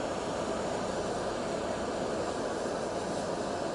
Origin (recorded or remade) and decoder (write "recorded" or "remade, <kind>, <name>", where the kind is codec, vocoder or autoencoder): recorded